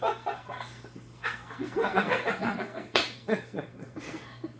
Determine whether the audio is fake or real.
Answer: fake